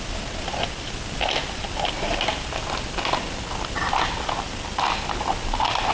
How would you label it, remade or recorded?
recorded